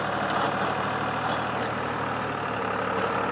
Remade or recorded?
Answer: recorded